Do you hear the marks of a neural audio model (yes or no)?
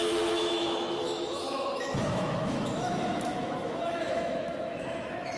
yes